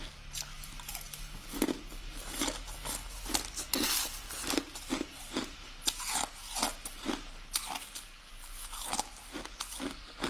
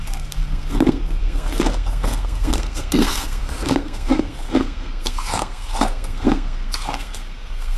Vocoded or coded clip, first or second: second